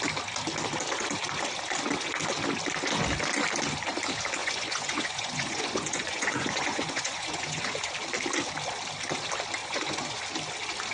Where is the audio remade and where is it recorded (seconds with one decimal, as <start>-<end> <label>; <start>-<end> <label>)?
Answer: 0.0-4.4 recorded; 4.4-7.9 remade; 7.9-9.6 recorded; 9.6-10.2 remade; 10.2-10.9 recorded